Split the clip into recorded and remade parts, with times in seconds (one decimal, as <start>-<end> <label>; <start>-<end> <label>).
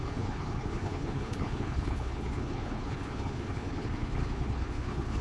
0.0-5.2 remade